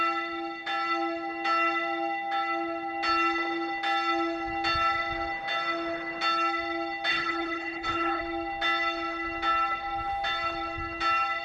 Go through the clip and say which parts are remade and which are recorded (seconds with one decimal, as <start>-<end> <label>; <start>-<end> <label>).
0.0-7.1 recorded; 7.1-8.2 remade; 8.2-11.4 recorded